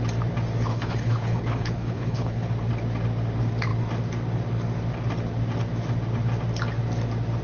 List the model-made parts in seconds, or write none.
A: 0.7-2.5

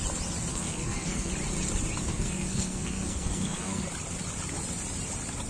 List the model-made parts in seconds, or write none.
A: 0.5-1.3; 2.1-3.8

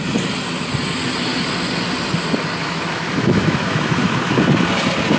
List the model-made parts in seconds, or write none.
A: 2.6-4.4

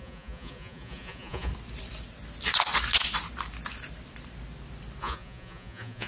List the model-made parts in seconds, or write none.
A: 0.0-1.5; 5.0-6.1

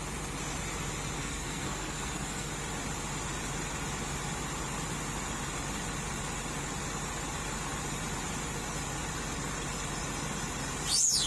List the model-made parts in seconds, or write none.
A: 1.2-2.5

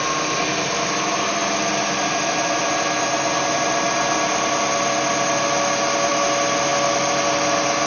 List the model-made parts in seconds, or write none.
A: none

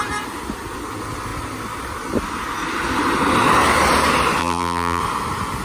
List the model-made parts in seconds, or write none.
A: 4.4-5.0

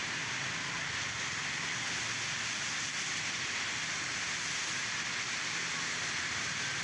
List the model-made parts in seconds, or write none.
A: none